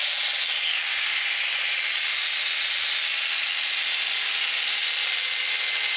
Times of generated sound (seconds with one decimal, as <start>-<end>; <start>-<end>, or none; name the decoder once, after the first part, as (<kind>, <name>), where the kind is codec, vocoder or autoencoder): none